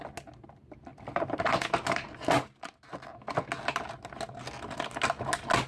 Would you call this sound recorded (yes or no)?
yes